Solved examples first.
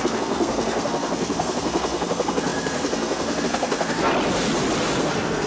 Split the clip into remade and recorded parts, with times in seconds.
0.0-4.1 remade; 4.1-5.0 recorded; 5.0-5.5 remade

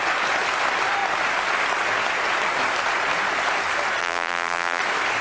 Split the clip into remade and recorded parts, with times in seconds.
0.0-4.0 recorded; 4.0-4.8 remade; 4.8-5.2 recorded